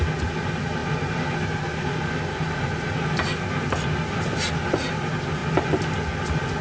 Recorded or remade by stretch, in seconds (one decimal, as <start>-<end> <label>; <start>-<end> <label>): 0.0-6.6 recorded